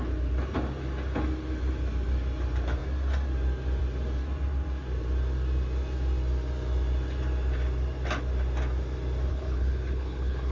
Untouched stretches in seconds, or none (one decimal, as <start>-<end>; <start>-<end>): 0.0-9.3